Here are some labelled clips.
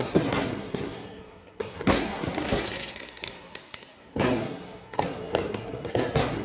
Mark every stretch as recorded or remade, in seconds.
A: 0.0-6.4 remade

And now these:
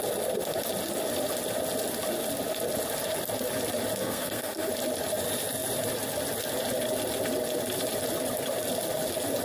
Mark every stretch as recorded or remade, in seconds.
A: 0.0-4.0 recorded; 4.0-4.7 remade; 4.7-9.4 recorded

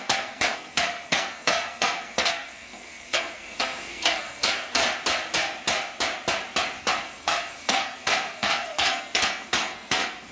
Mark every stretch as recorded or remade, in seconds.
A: 0.0-4.8 remade; 4.8-6.8 recorded; 6.8-10.3 remade

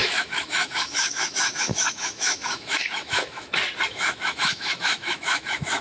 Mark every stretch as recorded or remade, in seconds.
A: 0.0-3.5 remade; 3.5-3.9 recorded; 3.9-5.8 remade

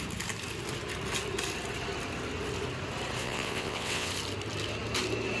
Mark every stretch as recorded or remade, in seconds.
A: 0.0-3.2 recorded; 3.2-4.1 remade; 4.1-5.4 recorded

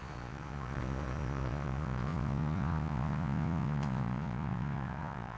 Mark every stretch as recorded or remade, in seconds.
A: 0.0-5.4 remade